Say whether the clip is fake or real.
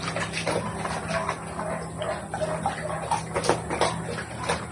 real